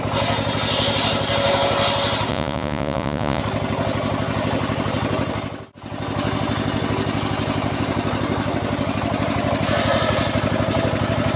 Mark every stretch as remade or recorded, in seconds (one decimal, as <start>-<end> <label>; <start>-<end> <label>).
0.0-2.3 recorded; 2.3-3.4 remade; 3.4-11.4 recorded

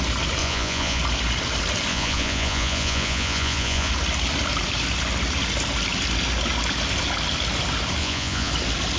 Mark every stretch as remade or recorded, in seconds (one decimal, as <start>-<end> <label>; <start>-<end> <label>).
0.0-0.4 recorded; 0.4-1.0 remade; 1.0-1.9 recorded; 1.9-3.9 remade; 3.9-8.0 recorded; 8.0-8.5 remade; 8.5-9.0 recorded

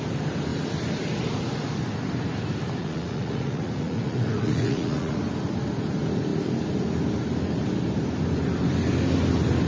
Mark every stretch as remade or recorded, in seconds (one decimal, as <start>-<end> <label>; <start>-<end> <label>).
0.0-2.8 recorded; 2.8-5.2 remade; 5.2-9.7 recorded

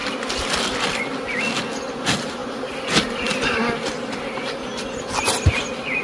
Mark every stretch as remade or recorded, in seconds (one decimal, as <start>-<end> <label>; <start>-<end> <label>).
0.0-6.0 recorded